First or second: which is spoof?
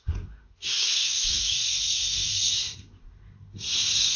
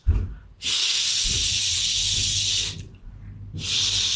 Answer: first